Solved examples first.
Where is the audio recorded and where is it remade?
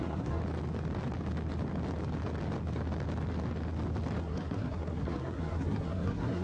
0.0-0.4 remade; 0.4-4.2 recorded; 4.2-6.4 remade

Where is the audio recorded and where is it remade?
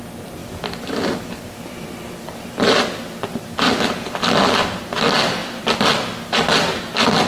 0.0-0.4 recorded; 0.4-4.8 remade; 4.8-5.4 recorded; 5.4-6.8 remade; 6.8-7.3 recorded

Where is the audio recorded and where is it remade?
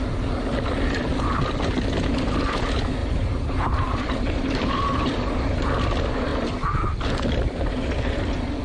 0.0-3.0 recorded; 3.0-5.7 remade; 5.7-8.6 recorded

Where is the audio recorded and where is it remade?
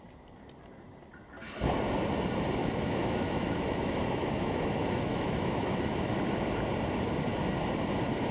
0.0-2.6 recorded; 2.6-6.1 remade; 6.1-8.3 recorded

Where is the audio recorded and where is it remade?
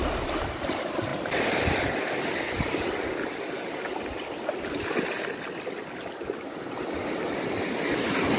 0.0-8.4 recorded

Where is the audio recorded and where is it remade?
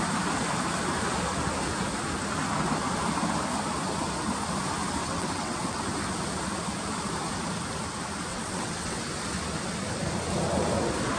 0.0-5.0 recorded; 5.0-5.8 remade; 5.8-8.3 recorded; 8.3-9.0 remade; 9.0-11.2 recorded